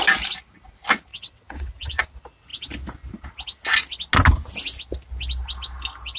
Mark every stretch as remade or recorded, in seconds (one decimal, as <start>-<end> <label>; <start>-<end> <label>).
0.0-1.1 recorded; 1.1-2.0 remade; 2.0-6.2 recorded